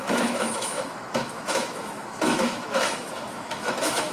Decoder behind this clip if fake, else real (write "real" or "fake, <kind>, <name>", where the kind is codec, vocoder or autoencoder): fake, autoencoder, DAC-VAE